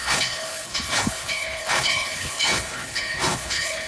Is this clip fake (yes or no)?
yes